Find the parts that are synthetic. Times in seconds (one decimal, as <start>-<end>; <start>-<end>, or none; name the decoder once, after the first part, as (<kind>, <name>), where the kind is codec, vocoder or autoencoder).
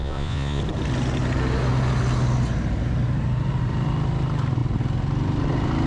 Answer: 0.0-0.6 (vocoder, Vocos)